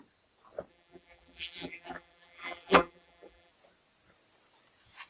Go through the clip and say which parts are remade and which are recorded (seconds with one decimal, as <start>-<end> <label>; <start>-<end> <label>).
0.0-0.7 recorded; 0.7-3.5 remade; 3.5-5.1 recorded